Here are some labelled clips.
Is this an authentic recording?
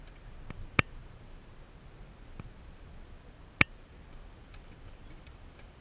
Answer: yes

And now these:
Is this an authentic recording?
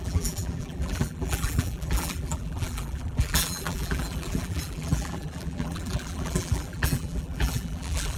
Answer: no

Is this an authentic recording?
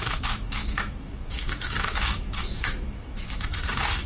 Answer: no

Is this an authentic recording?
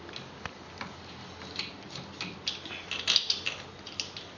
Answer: yes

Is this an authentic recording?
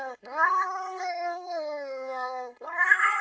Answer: no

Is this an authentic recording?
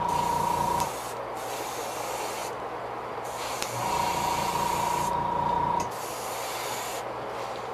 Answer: yes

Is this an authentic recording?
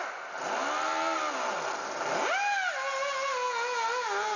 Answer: yes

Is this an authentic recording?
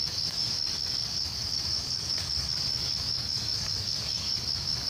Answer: no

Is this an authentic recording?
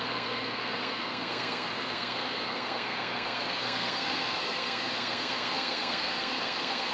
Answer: no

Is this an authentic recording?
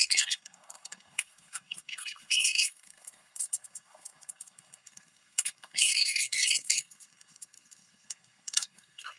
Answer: no